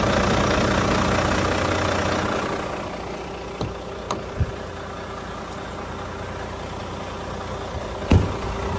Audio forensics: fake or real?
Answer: real